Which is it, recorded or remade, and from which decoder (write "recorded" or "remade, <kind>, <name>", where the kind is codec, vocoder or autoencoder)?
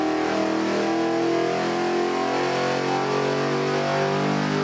recorded